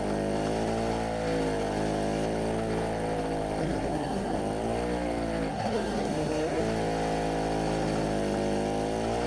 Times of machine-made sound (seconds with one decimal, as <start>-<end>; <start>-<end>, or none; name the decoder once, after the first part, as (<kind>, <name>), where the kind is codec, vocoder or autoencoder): 3.6-4.4 (codec, SNAC); 5.5-6.6